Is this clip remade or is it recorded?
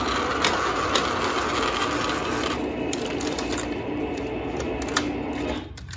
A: recorded